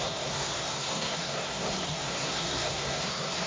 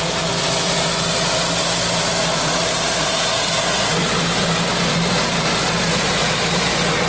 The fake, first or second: first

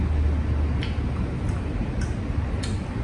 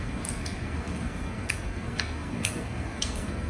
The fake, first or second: second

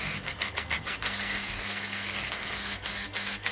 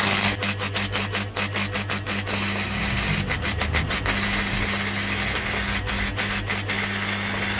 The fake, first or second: first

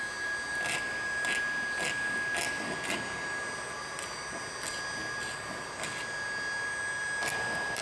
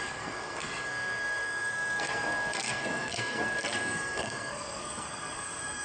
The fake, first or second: second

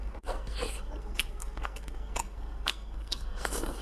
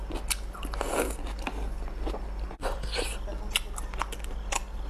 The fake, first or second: first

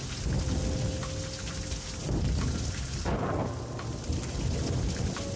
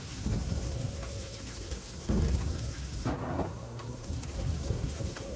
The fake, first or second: second